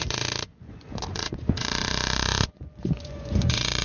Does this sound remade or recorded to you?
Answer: remade